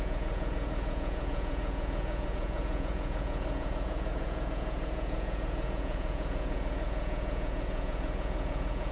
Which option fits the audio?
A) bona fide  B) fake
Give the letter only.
B